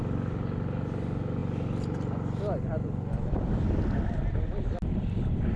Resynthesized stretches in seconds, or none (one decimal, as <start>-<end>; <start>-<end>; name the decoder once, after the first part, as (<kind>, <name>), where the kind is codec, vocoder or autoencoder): none